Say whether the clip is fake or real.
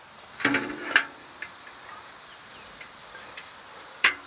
fake